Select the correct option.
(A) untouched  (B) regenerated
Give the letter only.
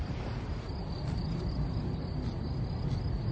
A